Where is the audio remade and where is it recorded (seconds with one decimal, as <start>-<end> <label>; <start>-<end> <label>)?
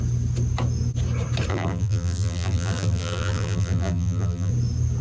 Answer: 0.0-1.5 recorded; 1.5-4.5 remade; 4.5-5.0 recorded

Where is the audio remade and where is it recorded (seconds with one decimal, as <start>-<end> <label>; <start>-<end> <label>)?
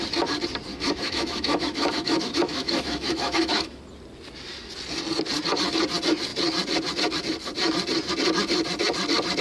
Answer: 0.0-0.7 recorded; 0.7-3.8 remade; 3.8-9.4 recorded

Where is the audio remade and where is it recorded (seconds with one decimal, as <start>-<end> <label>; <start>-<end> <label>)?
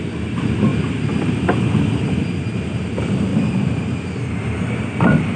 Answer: 0.0-3.3 recorded; 3.3-4.2 remade; 4.2-5.4 recorded